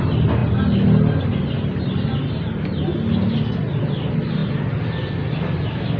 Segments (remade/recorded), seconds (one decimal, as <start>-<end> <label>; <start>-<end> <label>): 0.0-6.0 recorded